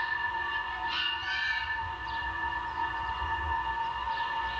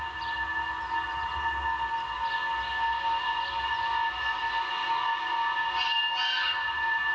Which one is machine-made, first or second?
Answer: first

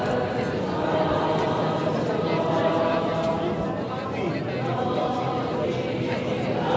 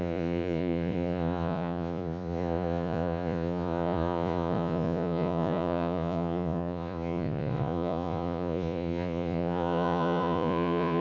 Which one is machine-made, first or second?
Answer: second